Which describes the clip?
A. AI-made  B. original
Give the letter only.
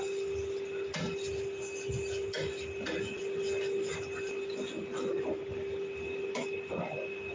B